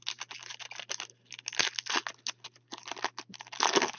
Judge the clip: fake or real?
real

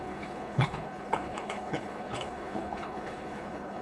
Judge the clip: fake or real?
fake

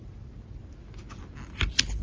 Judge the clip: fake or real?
real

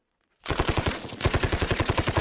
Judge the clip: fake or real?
fake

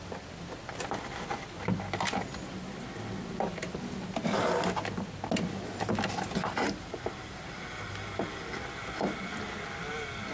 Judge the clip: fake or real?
real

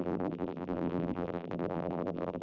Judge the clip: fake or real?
fake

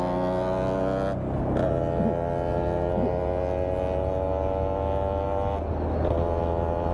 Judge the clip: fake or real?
real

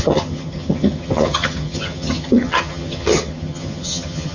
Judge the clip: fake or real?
fake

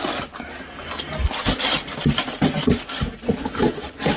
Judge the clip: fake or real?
real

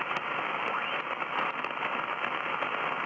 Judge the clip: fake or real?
real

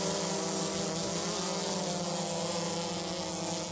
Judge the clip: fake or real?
real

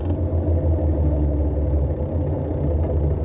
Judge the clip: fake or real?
real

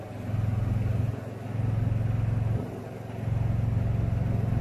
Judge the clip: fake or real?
real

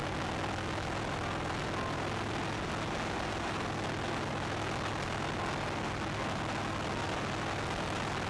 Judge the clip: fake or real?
real